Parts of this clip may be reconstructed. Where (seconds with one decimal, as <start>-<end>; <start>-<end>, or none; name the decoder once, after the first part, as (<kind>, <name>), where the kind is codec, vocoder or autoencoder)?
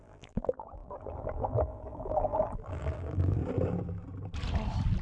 0.0-3.4 (vocoder, BigVGAN v2)